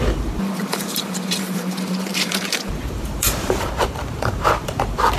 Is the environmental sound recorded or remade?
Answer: remade